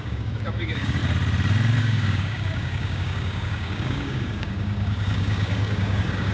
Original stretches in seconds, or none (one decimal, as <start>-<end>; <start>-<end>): 1.0-1.8